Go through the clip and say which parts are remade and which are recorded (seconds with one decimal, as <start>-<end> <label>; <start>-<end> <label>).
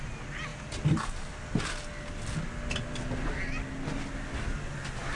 0.0-5.2 recorded